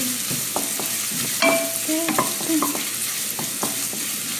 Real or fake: real